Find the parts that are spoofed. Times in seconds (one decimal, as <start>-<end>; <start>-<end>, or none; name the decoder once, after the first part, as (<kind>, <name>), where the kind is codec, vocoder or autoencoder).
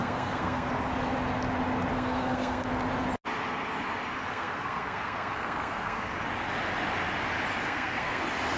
0.0-0.7 (codec, SNAC); 1.9-2.7; 4.3-6.1; 7.6-8.2